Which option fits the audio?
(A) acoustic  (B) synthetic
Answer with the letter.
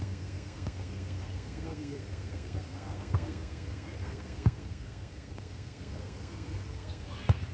B